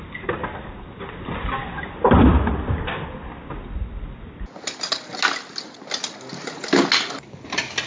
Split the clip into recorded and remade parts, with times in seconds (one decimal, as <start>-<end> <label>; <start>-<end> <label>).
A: 0.0-7.9 recorded